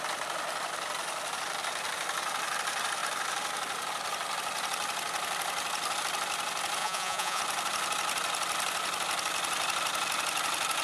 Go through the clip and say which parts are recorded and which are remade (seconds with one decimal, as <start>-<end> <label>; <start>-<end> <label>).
0.0-6.8 recorded; 6.8-7.4 remade; 7.4-10.8 recorded